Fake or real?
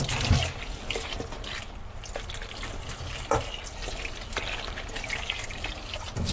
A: real